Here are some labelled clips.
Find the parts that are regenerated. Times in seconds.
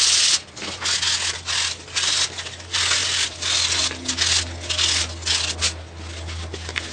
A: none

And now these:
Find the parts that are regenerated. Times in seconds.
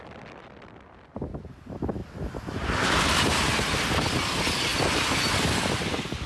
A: 0.0-4.7 (vocoder, BigVGAN v2); 5.3-6.3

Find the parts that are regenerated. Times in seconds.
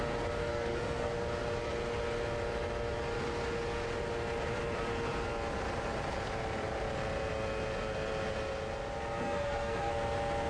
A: 0.4-1.2 (codec, SNAC); 9.2-9.9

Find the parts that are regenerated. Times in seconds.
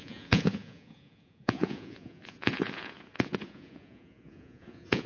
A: 0.0-5.1 (vocoder, Vocos)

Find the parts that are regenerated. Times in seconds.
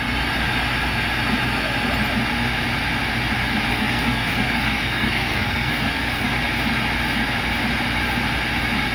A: 3.7-6.3 (codec, SNAC)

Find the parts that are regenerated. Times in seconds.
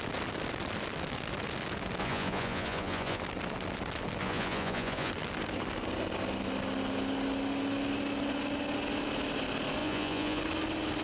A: 2.0-3.2 (vocoder, Vocos); 4.2-5.1; 9.8-10.4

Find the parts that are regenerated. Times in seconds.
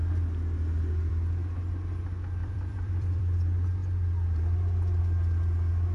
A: 2.4-3.2 (vocoder, BigVGAN v2)